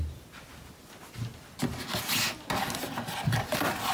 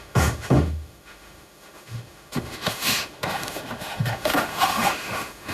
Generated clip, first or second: second